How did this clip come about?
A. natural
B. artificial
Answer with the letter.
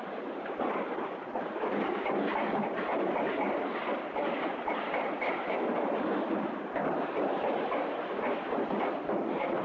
B